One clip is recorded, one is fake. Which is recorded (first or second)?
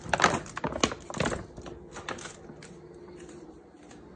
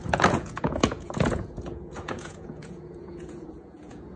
first